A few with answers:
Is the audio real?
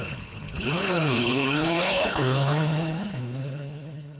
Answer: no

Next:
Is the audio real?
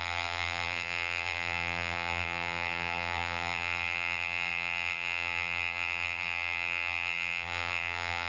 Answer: no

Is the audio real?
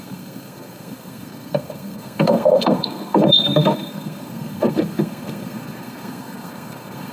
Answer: no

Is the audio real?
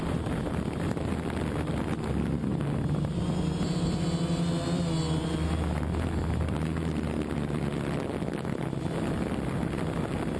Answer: yes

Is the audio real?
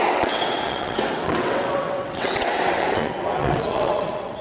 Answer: no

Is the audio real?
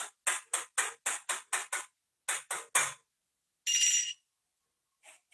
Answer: yes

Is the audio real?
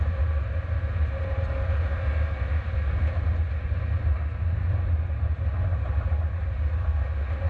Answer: yes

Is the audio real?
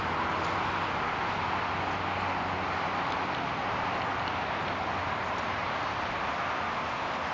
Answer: yes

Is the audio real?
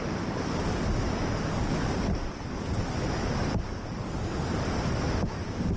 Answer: yes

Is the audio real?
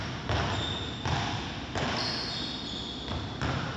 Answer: yes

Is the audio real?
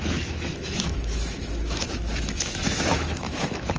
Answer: no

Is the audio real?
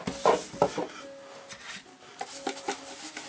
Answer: yes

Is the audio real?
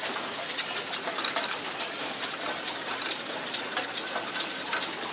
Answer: yes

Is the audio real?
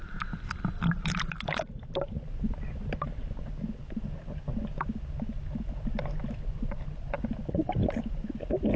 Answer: yes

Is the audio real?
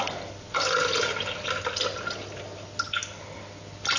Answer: yes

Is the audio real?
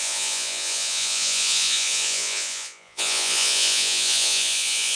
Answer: no